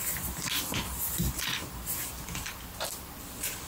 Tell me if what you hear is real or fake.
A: real